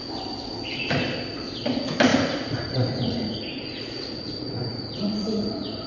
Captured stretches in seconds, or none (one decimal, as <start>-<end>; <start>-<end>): 0.0-2.1